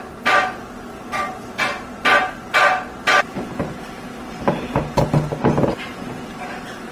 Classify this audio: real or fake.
real